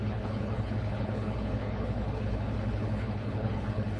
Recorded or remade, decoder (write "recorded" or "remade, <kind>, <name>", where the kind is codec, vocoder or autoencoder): remade, codec, HILCodec